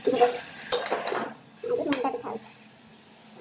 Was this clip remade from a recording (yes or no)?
no